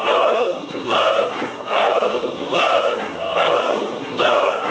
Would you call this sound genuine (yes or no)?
no